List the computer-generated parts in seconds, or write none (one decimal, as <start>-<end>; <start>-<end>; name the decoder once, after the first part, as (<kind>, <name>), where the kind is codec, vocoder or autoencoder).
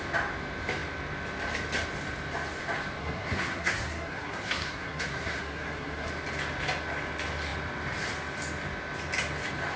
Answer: 3.0-6.1 (codec, SNAC)